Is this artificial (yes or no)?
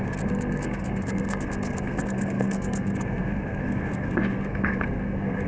yes